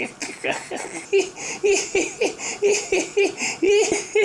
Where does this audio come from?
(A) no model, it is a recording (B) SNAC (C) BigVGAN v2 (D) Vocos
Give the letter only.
A